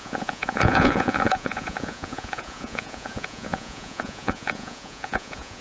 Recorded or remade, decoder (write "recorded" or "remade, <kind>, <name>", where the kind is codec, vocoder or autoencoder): remade, vocoder, Vocos